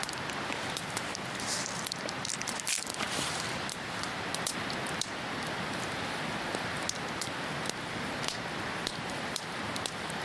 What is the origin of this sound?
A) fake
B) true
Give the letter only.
B